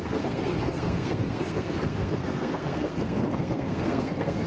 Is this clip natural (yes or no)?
no